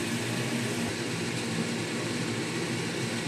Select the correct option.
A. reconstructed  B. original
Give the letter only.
B